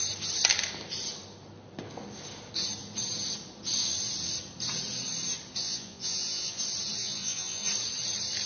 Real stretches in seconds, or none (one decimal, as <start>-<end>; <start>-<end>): 0.0-5.6; 6.6-7.0; 7.7-8.5